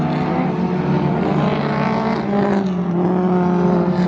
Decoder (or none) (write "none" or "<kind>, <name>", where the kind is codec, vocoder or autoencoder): none